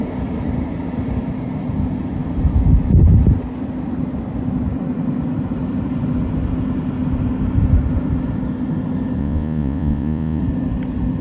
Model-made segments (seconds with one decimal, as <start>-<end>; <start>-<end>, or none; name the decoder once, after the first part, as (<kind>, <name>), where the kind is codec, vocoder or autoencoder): 9.2-10.4 (vocoder, Vocos)

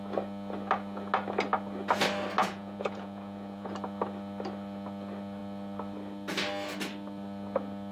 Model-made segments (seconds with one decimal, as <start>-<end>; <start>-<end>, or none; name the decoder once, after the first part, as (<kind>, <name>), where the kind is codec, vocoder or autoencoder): 2.4-3.7 (vocoder, Vocos)

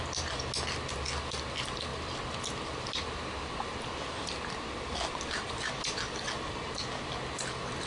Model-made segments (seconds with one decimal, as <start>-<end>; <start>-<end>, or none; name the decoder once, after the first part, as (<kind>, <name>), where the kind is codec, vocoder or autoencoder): none

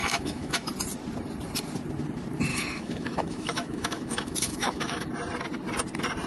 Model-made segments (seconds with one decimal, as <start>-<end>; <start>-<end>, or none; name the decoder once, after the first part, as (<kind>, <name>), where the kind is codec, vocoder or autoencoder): 0.0-0.7 (autoencoder, DAC-VAE); 2.5-5.1